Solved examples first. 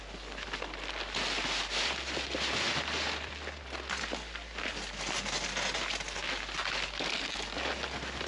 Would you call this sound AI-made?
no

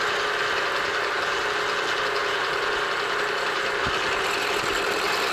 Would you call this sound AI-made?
no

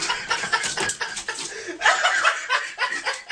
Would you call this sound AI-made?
yes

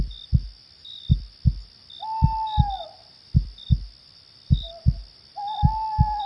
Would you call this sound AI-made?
no